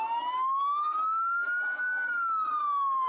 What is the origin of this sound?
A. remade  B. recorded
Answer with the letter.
B